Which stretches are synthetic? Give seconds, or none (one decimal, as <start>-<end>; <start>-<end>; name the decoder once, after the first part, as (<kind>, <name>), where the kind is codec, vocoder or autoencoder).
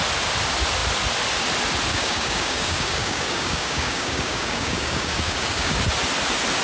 1.9-5.8 (codec, DAC)